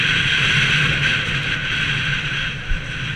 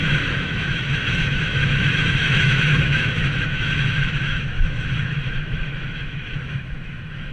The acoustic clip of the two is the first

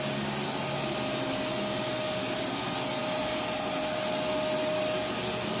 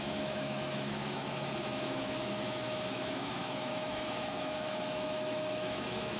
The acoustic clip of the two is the first